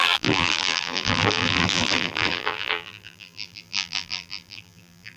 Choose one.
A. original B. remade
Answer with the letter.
B